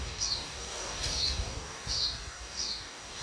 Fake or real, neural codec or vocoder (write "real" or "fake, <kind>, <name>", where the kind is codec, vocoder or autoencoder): fake, codec, DAC